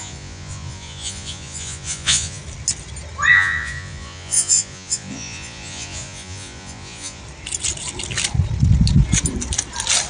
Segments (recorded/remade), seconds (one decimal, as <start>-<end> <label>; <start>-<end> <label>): 0.0-2.4 remade; 2.4-3.3 recorded; 3.3-7.2 remade; 7.2-10.1 recorded